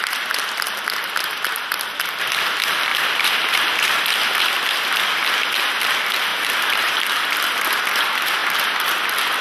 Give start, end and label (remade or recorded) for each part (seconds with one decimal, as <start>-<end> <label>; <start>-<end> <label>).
0.0-2.9 recorded; 2.9-4.0 remade; 4.0-6.3 recorded; 6.3-7.8 remade; 7.8-9.4 recorded